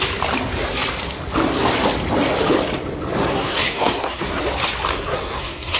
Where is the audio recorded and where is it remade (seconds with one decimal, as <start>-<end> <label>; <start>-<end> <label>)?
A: 0.0-3.3 recorded; 3.3-4.4 remade; 4.4-4.9 recorded; 4.9-5.8 remade